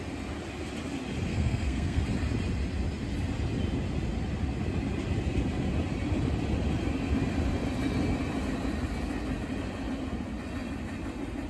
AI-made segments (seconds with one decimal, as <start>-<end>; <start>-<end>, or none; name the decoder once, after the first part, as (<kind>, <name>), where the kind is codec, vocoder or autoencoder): 1.3-2.0 (codec, SNAC)